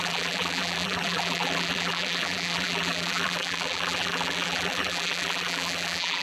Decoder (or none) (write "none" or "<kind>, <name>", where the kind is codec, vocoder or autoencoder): vocoder, BigVGAN v2